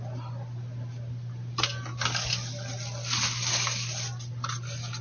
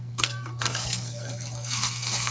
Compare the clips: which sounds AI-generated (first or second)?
second